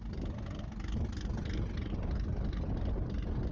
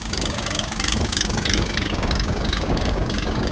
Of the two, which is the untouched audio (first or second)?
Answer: first